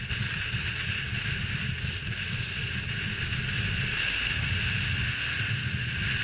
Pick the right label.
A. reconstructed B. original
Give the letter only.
B